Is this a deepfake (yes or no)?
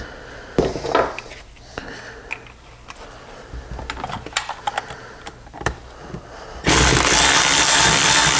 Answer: no